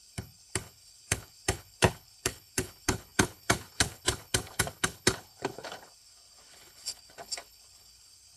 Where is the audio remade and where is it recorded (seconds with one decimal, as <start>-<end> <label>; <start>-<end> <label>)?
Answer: 0.0-8.4 remade

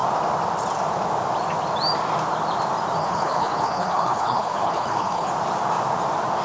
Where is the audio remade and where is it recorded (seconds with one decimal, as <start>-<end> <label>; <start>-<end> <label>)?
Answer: 0.0-3.0 recorded; 3.0-5.3 remade; 5.3-6.4 recorded